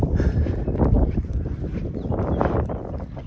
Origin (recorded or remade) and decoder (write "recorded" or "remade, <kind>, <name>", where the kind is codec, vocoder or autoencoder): recorded